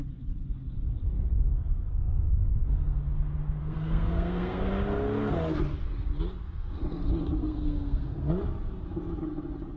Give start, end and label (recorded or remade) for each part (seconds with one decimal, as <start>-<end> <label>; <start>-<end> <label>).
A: 0.0-1.5 recorded; 1.5-3.0 remade; 3.0-3.6 recorded; 3.6-4.7 remade; 4.7-7.4 recorded; 7.4-8.3 remade; 8.3-9.8 recorded